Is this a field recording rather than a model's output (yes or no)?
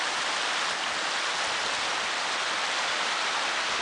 yes